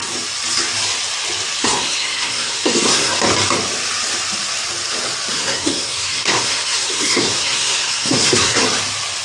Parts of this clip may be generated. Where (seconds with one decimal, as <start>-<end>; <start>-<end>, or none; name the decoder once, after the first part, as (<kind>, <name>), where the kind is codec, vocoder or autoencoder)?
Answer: 1.6-3.1 (codec, SNAC); 5.3-8.6